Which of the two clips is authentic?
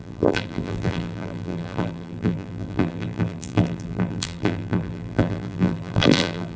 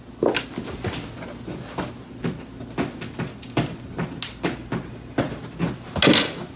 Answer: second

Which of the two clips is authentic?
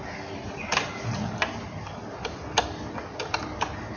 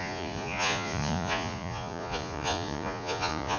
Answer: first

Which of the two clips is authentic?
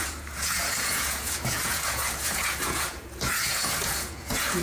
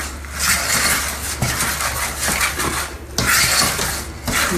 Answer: second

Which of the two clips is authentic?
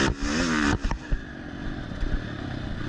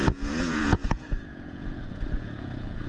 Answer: first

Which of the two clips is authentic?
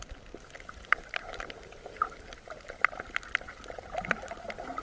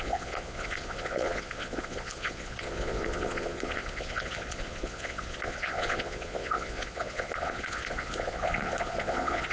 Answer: first